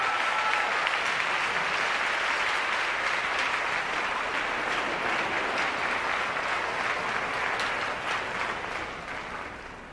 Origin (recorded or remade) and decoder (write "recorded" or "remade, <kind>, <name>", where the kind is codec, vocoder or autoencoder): recorded